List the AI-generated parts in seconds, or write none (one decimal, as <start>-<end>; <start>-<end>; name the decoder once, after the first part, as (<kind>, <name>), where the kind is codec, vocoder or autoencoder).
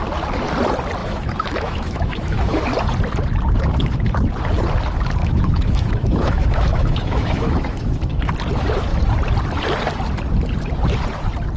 1.0-2.6 (autoencoder, DAC-VAE); 5.2-8.3